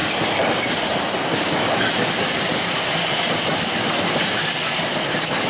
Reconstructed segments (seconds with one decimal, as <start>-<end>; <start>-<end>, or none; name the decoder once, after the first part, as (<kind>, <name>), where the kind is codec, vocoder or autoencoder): none